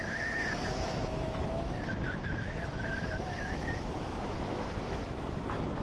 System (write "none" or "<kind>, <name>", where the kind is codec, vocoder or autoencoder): autoencoder, DAC-VAE